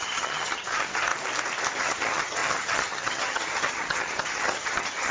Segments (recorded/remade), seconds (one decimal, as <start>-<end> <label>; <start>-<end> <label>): 0.0-1.1 remade; 1.1-1.8 recorded; 1.8-5.1 remade